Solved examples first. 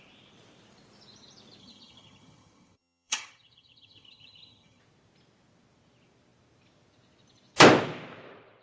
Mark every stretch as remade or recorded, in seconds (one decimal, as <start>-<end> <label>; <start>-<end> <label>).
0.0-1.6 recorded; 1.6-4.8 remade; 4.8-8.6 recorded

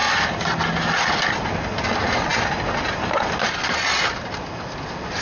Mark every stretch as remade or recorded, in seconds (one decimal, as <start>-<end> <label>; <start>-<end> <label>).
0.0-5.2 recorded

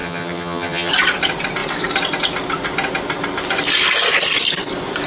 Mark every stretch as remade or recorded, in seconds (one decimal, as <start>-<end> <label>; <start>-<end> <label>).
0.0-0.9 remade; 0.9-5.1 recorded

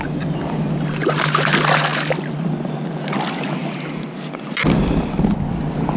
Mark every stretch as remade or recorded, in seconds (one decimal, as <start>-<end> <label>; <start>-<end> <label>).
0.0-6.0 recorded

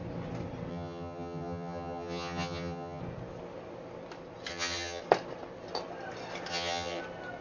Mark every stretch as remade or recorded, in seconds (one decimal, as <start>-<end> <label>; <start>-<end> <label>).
0.0-0.7 recorded; 0.7-3.0 remade; 3.0-4.5 recorded; 4.5-5.0 remade; 5.0-6.5 recorded; 6.5-7.0 remade; 7.0-7.4 recorded

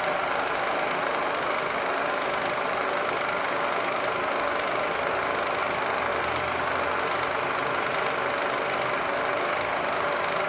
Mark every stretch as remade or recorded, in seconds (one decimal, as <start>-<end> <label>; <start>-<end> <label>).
0.0-10.5 recorded